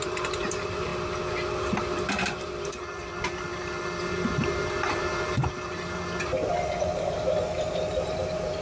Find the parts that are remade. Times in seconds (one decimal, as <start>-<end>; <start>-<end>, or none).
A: 0.0-0.9; 1.8-8.6

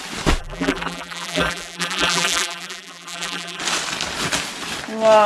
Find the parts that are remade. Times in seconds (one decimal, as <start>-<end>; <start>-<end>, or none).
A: 0.4-3.6

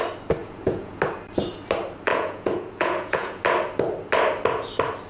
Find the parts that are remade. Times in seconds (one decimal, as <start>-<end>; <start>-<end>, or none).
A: 0.4-1.0; 2.1-3.4

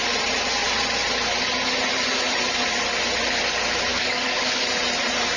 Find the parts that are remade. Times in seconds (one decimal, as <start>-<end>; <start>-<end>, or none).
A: 3.9-4.6

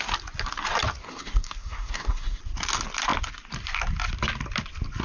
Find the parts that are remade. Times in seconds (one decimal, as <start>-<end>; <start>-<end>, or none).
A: 1.0-2.4

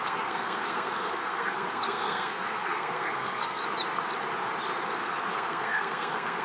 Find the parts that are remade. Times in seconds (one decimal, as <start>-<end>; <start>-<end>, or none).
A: 0.0-3.6; 4.9-6.4